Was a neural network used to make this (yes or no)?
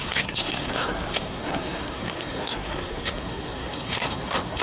yes